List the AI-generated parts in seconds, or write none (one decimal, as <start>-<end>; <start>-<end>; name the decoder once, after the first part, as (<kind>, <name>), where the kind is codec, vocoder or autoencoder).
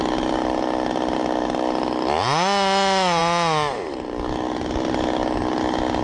none